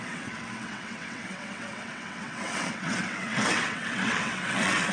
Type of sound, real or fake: fake